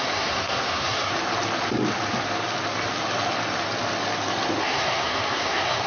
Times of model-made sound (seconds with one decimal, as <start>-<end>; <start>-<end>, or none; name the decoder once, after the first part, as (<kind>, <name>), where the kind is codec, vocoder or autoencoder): 0.0-1.1 (codec, SNAC); 4.6-5.9